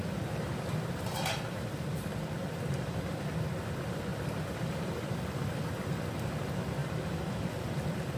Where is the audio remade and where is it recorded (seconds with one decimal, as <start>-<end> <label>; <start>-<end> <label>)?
0.0-6.8 remade; 6.8-7.5 recorded; 7.5-8.2 remade